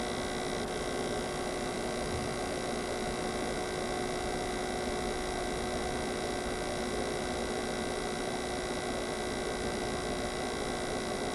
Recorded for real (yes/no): yes